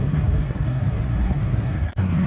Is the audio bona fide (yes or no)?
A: no